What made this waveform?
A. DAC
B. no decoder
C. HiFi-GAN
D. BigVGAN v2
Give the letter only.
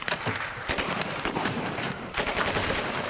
D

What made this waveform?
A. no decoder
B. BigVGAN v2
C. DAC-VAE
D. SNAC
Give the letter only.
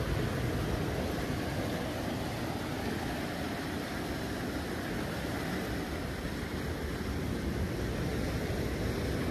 A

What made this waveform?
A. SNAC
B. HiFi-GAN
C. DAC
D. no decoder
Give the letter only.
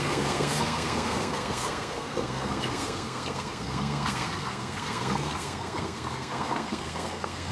A